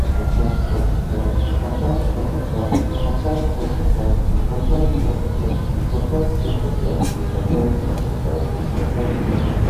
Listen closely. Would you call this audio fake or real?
real